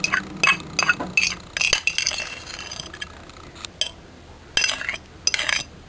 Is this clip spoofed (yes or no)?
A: no